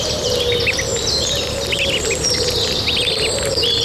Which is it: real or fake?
real